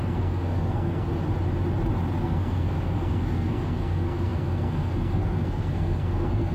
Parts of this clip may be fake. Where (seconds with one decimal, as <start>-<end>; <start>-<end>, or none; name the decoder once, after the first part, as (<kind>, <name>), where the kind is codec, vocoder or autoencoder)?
0.0-1.1 (codec, SNAC); 2.2-6.5